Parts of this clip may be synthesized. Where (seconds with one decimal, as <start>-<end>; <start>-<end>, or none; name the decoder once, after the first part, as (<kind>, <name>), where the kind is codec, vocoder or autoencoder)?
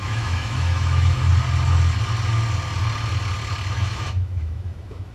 0.0-1.3 (autoencoder, DAC-VAE); 3.7-5.1